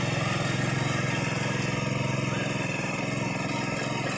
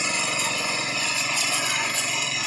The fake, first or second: second